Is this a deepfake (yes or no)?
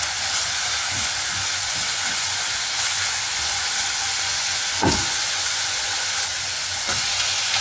yes